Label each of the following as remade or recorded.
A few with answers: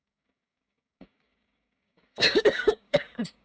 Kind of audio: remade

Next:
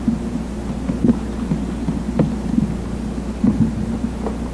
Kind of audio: recorded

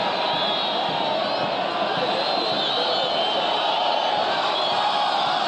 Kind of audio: recorded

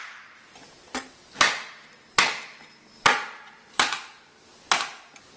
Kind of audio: recorded